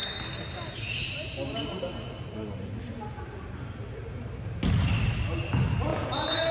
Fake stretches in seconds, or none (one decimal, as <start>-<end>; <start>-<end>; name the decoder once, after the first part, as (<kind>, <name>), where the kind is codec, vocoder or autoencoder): 5.9-6.5 (vocoder, Vocos)